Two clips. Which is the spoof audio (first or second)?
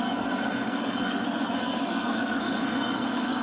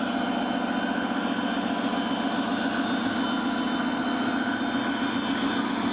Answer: first